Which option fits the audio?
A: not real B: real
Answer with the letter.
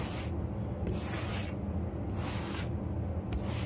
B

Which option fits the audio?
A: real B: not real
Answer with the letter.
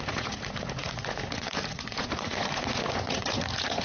B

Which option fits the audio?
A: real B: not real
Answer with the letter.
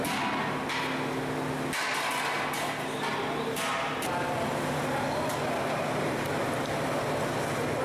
A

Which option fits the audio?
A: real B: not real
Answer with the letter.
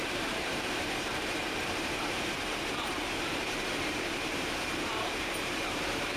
B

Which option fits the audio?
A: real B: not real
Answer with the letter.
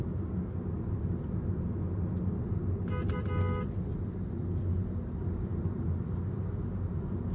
A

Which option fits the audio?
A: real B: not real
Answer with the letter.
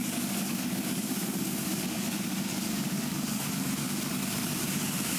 B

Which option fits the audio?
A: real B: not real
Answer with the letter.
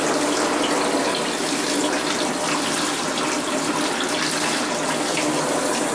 A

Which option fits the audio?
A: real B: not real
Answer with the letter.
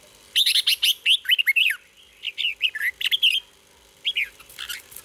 A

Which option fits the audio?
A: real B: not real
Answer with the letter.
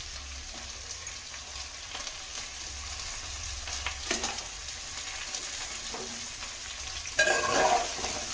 A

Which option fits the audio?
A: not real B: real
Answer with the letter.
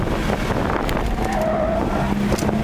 B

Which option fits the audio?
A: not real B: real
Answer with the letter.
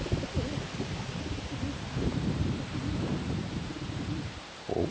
A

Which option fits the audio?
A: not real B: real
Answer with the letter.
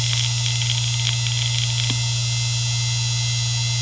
B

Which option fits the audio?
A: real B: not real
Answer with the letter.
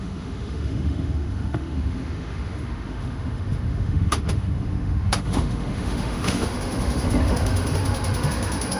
B